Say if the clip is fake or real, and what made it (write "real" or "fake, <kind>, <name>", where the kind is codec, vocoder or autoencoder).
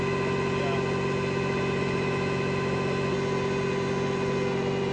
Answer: real